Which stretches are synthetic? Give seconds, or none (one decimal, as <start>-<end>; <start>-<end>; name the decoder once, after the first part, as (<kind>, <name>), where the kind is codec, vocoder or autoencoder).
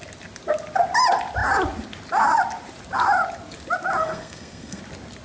4.0-4.8 (codec, SNAC)